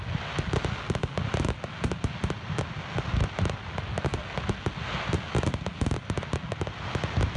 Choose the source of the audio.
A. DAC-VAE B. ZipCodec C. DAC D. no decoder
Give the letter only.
D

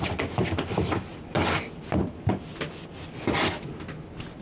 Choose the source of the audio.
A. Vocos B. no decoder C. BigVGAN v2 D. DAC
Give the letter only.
B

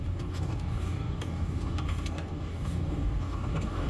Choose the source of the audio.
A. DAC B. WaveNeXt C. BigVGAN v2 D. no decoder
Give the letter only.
A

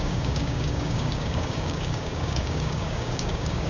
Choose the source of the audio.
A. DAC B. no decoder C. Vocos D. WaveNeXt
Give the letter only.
A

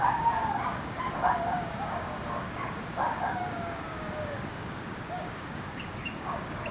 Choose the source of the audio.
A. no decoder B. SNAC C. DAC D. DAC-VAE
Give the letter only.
C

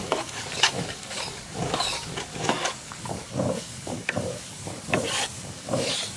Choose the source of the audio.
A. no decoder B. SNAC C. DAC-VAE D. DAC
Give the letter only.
D